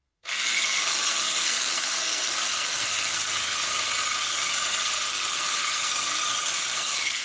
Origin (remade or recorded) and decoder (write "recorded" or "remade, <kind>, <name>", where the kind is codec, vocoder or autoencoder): remade, codec, SNAC